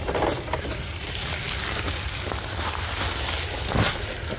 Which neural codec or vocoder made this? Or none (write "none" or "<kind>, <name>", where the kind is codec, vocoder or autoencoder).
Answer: none